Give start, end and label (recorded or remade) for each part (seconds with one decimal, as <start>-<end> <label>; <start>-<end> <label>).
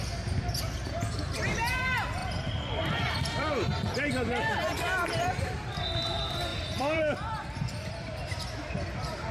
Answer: 0.0-2.2 recorded; 2.2-5.4 remade; 5.4-6.5 recorded; 6.5-8.4 remade; 8.4-9.3 recorded